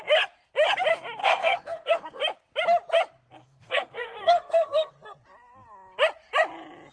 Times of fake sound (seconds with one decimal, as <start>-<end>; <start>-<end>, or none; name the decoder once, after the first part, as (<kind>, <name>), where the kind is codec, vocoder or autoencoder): 1.2-2.2 (codec, SNAC); 3.4-4.9